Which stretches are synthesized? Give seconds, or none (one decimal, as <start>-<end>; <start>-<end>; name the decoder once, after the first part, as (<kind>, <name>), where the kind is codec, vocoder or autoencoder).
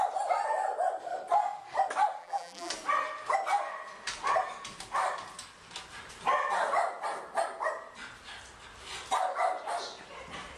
2.2-2.7 (vocoder, BigVGAN v2)